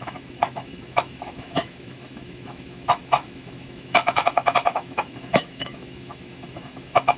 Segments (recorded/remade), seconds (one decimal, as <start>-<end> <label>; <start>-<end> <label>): 0.0-7.2 remade